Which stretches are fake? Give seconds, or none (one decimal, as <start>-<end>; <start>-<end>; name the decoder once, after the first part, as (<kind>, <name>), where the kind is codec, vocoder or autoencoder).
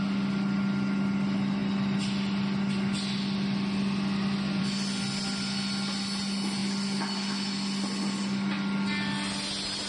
none